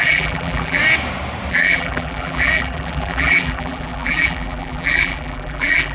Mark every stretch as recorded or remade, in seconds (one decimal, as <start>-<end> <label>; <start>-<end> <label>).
0.0-0.8 remade; 0.8-1.5 recorded; 1.5-5.9 remade